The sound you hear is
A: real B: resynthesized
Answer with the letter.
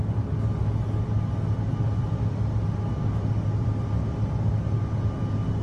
A